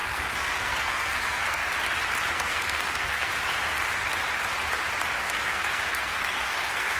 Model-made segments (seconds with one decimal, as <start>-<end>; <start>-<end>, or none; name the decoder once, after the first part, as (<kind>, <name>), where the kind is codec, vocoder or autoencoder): 0.0-1.6 (codec, SNAC); 2.3-3.3; 5.2-7.0